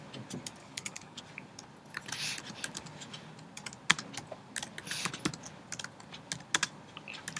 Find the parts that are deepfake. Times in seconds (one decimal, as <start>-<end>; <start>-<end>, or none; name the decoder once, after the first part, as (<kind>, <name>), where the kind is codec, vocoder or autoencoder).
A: 0.6-1.2 (codec, DAC)